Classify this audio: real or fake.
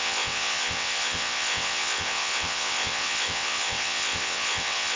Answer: fake